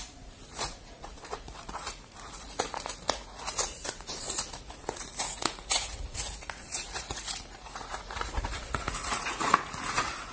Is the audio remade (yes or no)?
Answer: yes